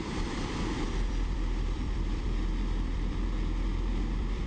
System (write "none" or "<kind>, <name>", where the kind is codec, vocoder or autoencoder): vocoder, BigVGAN v2